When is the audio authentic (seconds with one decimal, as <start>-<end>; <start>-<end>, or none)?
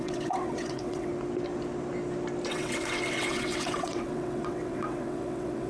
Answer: 1.1-2.5